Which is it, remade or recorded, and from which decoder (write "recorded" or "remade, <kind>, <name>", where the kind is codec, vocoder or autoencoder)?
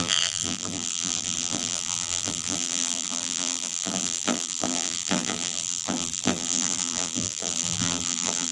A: remade, vocoder, BigVGAN v2